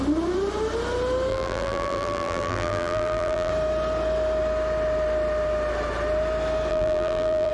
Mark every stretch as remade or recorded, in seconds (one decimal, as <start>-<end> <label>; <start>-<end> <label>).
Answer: 0.0-1.3 recorded; 1.3-3.5 remade; 3.5-6.7 recorded; 6.7-7.5 remade